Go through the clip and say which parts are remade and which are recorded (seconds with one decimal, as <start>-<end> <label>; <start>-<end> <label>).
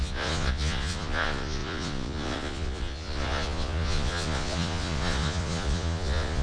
0.0-6.4 remade